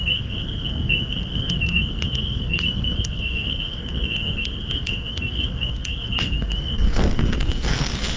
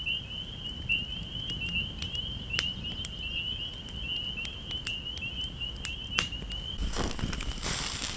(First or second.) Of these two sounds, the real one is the second